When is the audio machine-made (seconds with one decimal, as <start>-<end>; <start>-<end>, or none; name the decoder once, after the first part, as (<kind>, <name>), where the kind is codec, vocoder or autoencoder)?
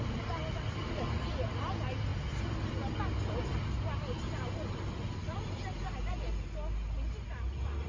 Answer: none